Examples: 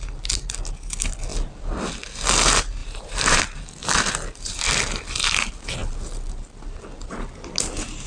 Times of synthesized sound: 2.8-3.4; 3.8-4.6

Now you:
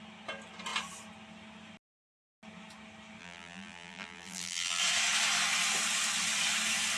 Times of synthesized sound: 3.2-4.8

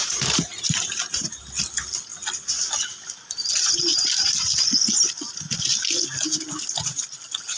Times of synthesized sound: 0.0-1.5